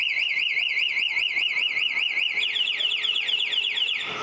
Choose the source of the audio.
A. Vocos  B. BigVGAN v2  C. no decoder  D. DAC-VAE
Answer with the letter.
B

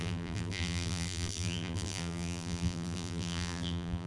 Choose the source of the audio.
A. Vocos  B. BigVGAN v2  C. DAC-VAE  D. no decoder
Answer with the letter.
B